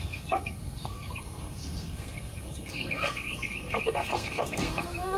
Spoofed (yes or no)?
yes